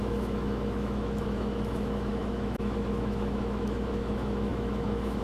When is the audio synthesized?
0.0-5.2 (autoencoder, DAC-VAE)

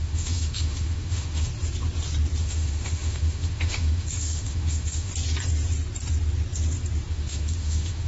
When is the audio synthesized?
0.0-1.5 (autoencoder, DAC-VAE); 2.4-5.1; 7.1-8.1

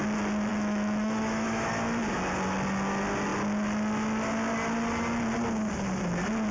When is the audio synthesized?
0.5-1.7 (autoencoder, DAC-VAE)

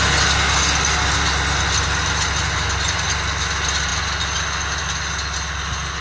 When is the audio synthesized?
none